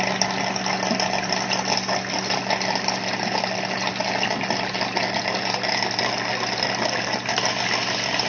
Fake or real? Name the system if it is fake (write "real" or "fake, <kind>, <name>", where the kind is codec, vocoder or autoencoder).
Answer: real